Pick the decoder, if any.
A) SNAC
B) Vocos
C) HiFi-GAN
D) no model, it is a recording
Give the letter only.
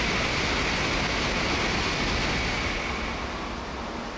D